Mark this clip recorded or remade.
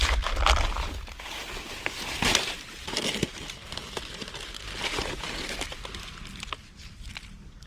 recorded